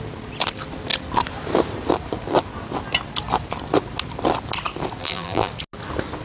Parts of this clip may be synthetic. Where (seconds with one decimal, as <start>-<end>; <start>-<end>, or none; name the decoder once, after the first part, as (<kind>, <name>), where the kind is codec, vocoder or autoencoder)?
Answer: 5.0-5.5 (vocoder, BigVGAN v2)

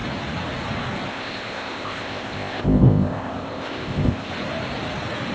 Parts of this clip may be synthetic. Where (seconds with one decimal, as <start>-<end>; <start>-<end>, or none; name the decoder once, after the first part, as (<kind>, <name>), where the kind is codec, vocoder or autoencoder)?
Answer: 1.1-4.3 (codec, ZipCodec)